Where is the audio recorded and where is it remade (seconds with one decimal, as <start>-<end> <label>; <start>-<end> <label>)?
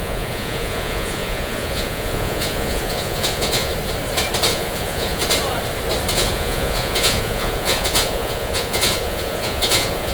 0.0-3.7 remade; 3.7-4.5 recorded; 4.5-5.2 remade; 5.2-6.1 recorded; 6.1-10.1 remade